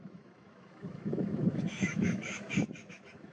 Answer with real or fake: fake